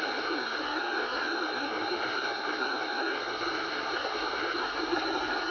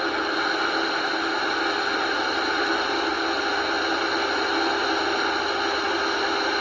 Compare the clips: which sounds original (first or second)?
second